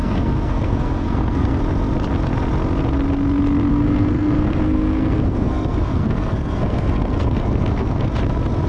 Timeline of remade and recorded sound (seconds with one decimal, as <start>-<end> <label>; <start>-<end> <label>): 0.0-1.6 remade; 1.6-3.7 recorded; 3.7-8.1 remade; 8.1-8.7 recorded